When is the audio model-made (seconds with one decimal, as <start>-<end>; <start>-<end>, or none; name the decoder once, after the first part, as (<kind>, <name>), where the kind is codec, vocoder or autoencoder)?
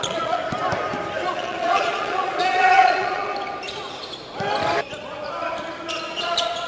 0.0-0.4 (vocoder, Vocos); 1.3-3.3; 6.1-6.7